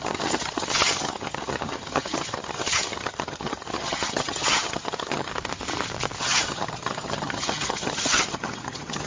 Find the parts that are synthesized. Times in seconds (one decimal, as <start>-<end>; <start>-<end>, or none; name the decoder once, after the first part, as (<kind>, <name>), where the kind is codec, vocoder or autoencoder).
0.0-5.3 (vocoder, HiFi-GAN); 6.2-9.1